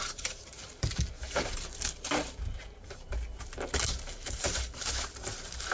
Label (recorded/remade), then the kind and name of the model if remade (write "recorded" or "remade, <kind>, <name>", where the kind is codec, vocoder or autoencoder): remade, vocoder, BigVGAN v2